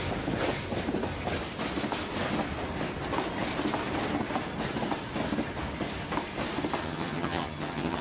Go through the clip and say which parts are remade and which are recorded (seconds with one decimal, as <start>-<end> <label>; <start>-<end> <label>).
0.0-6.8 recorded; 6.8-8.0 remade